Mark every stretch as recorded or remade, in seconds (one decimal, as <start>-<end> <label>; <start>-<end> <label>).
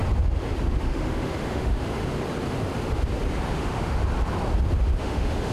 0.0-0.8 recorded; 0.8-2.0 remade; 2.0-3.5 recorded; 3.5-4.0 remade; 4.0-5.0 recorded; 5.0-5.5 remade